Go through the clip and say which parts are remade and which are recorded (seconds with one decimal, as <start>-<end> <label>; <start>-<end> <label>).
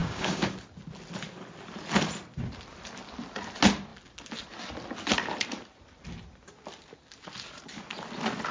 0.0-0.5 remade; 0.5-8.5 recorded